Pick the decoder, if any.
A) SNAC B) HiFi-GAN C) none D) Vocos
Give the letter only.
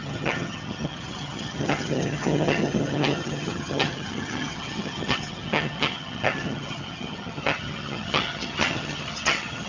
B